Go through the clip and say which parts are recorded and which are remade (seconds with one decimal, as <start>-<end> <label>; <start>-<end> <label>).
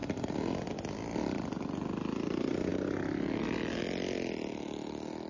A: 0.0-5.3 recorded